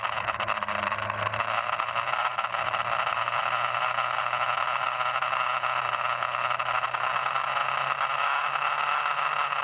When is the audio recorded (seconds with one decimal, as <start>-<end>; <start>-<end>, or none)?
0.0-9.6